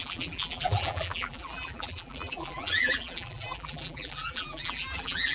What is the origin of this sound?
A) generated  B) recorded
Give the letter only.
A